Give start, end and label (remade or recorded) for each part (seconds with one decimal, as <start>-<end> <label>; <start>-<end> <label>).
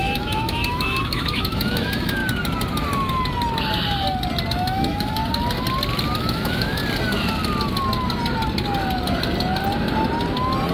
0.0-2.2 remade; 2.2-4.5 recorded; 4.5-5.2 remade; 5.2-6.2 recorded; 6.2-6.8 remade; 6.8-10.7 recorded